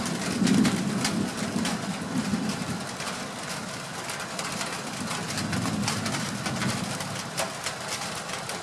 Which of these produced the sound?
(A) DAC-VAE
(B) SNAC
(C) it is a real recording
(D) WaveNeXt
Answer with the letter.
C